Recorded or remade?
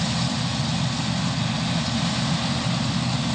recorded